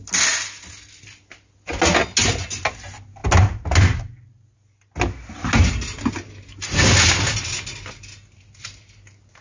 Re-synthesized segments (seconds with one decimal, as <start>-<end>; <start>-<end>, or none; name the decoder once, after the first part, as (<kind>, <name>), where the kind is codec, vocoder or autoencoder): none